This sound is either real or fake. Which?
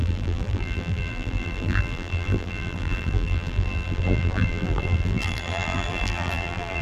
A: fake